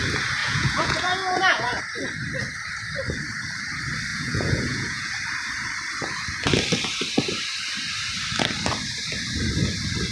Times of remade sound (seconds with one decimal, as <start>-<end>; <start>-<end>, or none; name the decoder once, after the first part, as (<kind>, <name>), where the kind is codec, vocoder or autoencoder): 0.4-1.8 (vocoder, Vocos); 4.1-5.1